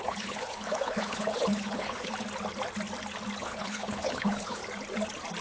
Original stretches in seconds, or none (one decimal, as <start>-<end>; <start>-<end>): 2.1-3.4; 4.6-5.4